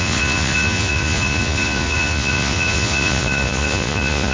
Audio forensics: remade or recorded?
remade